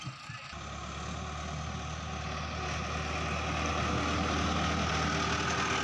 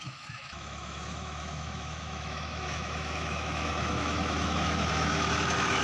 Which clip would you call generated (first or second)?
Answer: second